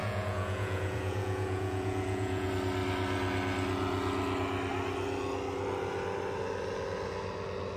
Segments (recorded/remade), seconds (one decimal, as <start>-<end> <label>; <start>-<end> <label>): 0.0-2.5 remade; 2.5-7.8 recorded